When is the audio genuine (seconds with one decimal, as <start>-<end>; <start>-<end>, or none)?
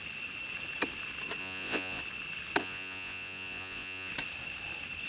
0.0-1.4; 2.0-2.6; 4.1-5.1